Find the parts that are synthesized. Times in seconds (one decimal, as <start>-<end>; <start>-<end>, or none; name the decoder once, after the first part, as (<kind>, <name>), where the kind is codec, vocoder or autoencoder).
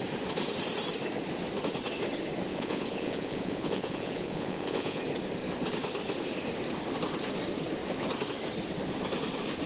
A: 2.5-5.0 (vocoder, Vocos)